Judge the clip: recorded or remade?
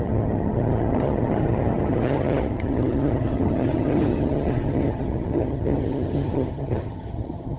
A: remade